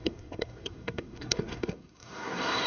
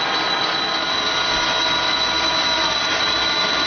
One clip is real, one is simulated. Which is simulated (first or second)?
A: first